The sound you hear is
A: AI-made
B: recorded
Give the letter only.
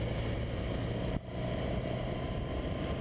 A